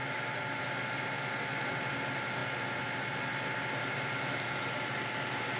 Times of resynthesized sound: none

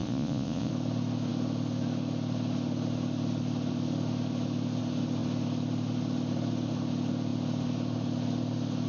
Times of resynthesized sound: 0.0-0.7 (vocoder, Vocos)

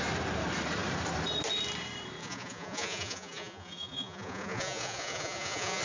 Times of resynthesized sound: 2.2-5.8 (vocoder, Vocos)